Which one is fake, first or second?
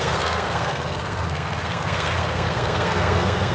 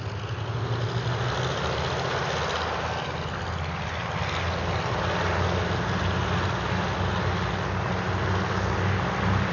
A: first